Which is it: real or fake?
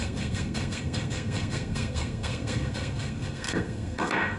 fake